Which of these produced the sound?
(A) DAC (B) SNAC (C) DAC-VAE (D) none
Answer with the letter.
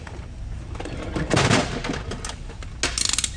D